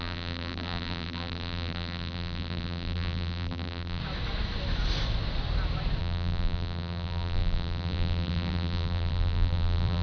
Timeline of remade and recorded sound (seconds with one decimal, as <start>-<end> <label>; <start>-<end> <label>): 0.0-4.0 remade; 4.0-6.0 recorded; 6.0-10.0 remade